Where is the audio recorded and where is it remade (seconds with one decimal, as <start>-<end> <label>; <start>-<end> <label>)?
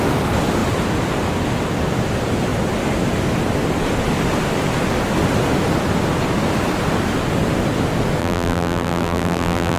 0.0-8.2 recorded; 8.2-9.8 remade